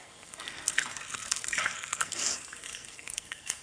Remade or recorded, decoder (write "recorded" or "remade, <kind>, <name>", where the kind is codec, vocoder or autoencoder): remade, codec, SNAC